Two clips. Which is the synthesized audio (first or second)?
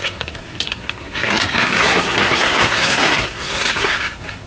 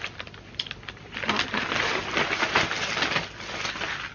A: first